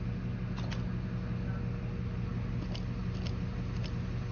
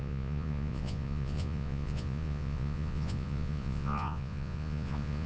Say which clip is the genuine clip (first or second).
first